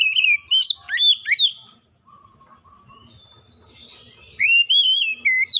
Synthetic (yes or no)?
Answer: no